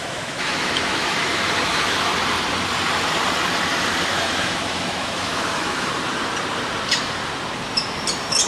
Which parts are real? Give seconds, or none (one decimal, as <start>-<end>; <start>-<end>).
2.1-4.1; 5.9-8.5